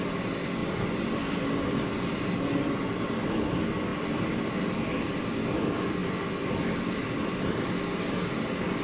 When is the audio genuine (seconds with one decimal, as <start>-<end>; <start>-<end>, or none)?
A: 0.0-0.6; 1.4-6.0; 7.6-8.8